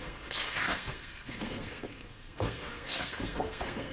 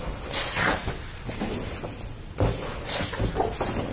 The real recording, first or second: second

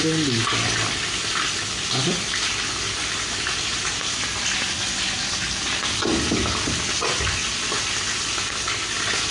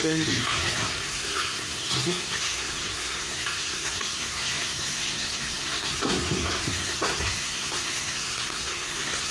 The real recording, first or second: first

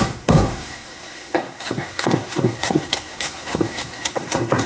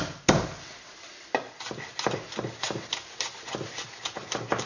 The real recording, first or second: second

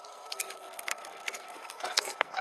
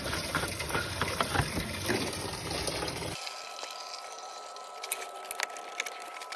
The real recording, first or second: second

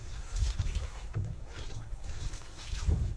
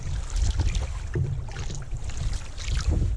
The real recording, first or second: second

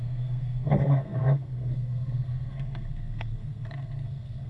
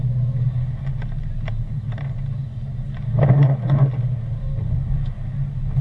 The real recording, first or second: second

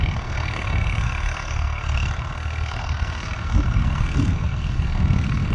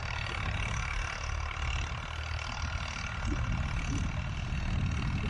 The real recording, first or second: second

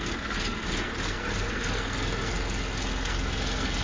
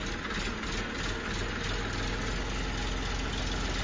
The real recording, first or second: second